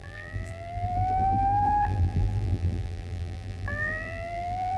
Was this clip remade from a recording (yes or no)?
yes